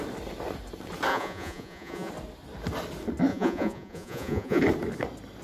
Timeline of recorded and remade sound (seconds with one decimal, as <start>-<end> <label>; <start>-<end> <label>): 0.0-1.1 recorded; 1.1-2.1 remade; 2.1-3.3 recorded; 3.3-4.6 remade; 4.6-5.4 recorded